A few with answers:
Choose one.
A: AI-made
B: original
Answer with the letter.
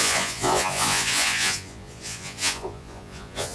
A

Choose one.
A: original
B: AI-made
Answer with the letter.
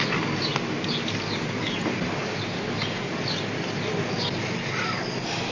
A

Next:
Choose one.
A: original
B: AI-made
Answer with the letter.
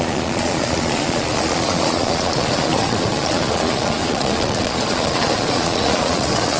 B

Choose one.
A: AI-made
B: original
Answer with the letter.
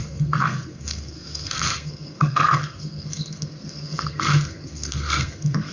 A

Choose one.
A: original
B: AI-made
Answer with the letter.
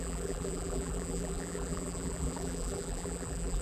B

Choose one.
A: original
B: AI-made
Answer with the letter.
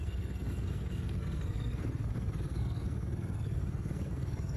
B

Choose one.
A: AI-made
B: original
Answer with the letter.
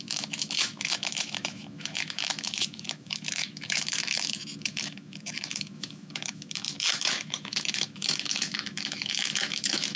A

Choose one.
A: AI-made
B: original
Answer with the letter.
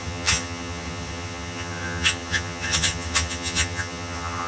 A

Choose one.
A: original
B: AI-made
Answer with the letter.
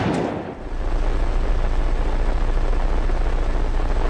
A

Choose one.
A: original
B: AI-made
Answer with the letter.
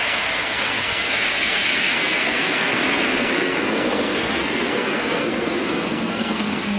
B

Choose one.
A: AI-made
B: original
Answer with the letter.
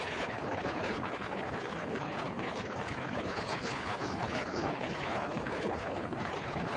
A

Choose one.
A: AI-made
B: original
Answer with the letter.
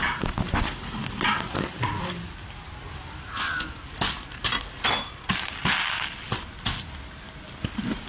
B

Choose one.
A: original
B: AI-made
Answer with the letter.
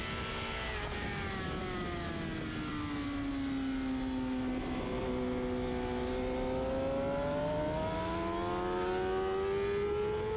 A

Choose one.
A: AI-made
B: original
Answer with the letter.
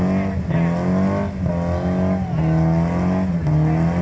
B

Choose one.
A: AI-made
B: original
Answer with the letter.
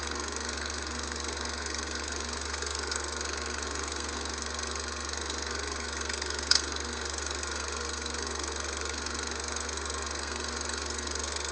A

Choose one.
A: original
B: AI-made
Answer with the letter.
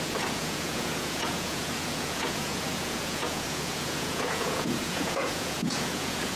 B